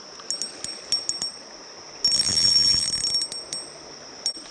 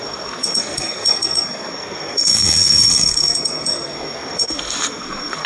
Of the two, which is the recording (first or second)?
first